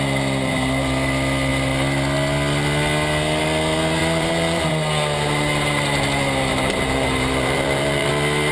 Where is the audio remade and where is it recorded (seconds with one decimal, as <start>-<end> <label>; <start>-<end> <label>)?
0.0-4.0 recorded; 4.0-4.7 remade; 4.7-6.5 recorded; 6.5-8.1 remade; 8.1-8.5 recorded